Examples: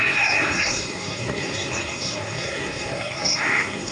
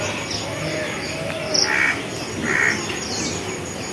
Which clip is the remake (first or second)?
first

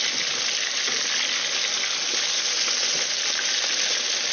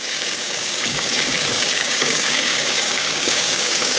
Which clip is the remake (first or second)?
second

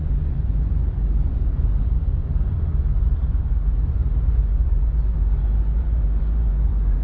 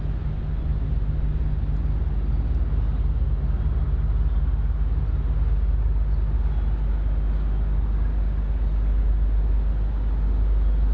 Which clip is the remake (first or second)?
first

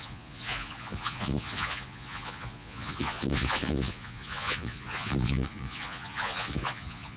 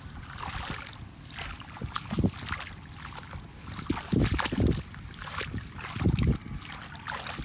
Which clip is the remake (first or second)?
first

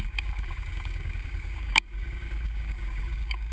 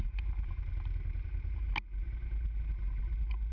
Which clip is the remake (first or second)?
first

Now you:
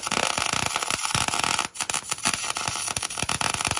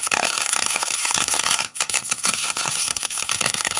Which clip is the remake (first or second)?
second